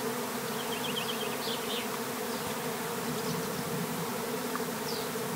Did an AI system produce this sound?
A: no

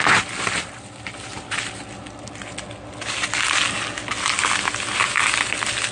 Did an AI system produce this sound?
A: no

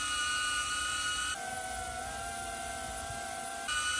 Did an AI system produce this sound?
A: no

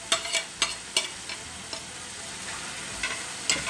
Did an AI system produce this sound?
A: no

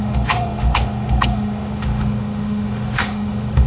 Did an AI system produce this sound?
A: yes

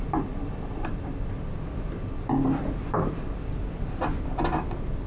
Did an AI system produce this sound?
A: no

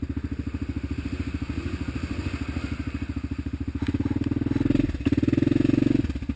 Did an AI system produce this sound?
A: no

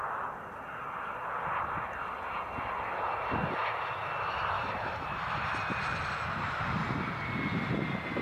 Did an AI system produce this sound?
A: no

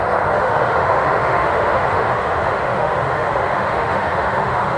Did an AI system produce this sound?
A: yes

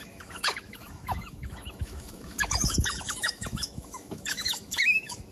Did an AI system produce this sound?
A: yes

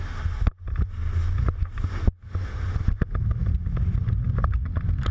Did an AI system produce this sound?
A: no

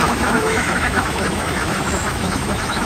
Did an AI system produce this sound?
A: yes